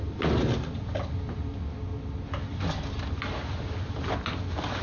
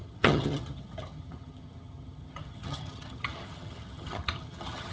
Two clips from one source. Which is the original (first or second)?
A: first